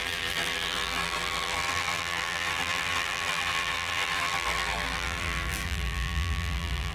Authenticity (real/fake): fake